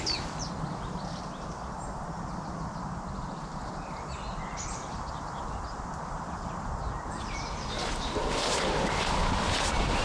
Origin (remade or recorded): remade